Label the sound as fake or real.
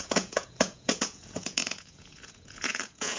fake